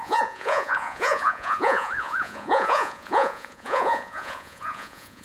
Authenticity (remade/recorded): remade